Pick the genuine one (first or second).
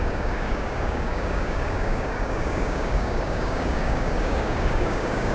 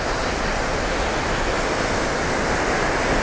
second